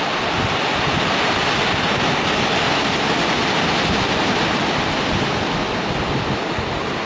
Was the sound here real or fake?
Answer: real